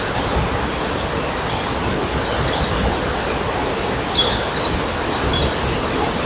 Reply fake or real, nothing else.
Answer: real